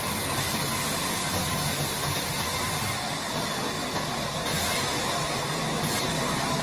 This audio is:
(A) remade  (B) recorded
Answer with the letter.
B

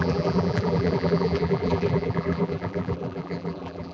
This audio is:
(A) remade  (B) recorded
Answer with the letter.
A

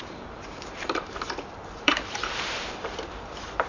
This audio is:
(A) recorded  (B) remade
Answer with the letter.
B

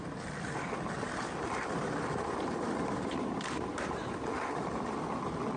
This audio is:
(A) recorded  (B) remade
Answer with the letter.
B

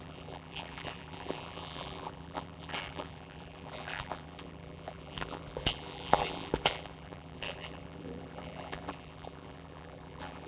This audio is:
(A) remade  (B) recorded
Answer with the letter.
A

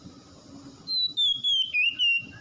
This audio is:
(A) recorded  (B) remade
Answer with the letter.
A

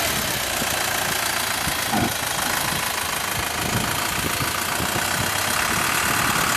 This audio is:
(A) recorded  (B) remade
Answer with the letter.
A